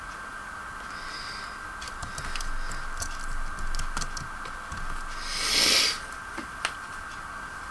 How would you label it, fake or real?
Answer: real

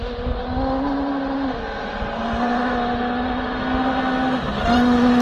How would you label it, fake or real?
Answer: real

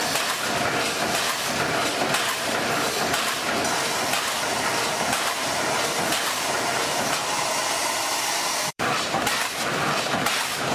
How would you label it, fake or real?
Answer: fake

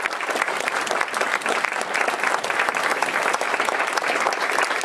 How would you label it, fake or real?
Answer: fake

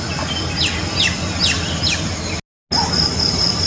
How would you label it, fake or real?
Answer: real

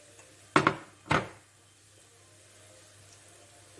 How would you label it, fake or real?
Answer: real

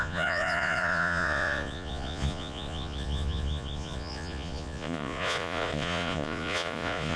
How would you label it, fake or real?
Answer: fake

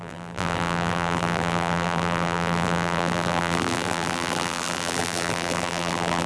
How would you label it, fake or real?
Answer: fake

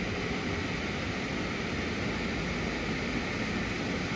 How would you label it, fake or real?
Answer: real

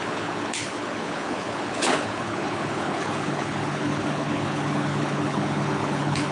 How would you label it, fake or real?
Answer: fake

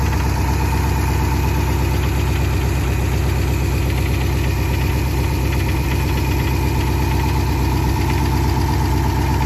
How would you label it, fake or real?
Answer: real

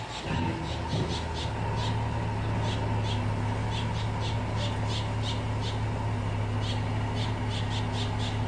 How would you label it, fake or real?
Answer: real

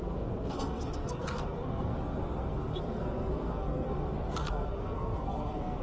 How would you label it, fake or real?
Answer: fake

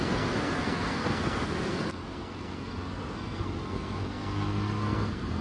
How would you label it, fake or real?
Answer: fake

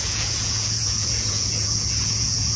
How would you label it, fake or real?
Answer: fake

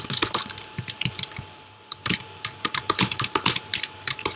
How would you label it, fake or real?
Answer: fake